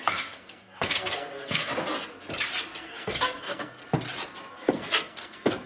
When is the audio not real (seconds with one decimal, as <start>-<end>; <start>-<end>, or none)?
0.0-1.7; 2.8-3.8; 4.5-5.7

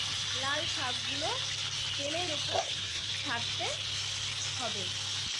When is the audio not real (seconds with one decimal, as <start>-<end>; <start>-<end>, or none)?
2.5-3.1